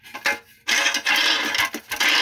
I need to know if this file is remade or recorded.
recorded